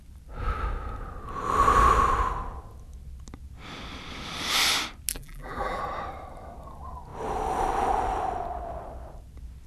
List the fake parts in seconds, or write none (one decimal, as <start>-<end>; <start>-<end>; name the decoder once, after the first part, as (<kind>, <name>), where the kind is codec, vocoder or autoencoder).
5.1-5.8 (vocoder, BigVGAN v2)